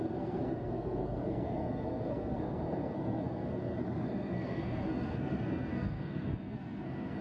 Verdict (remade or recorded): remade